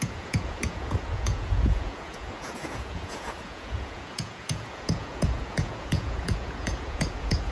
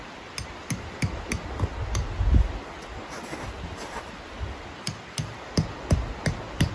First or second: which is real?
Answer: second